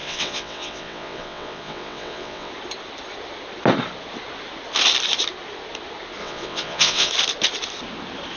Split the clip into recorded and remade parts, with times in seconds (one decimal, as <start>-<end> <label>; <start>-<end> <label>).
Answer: 0.0-2.5 remade; 2.5-6.2 recorded; 6.2-7.1 remade; 7.1-8.4 recorded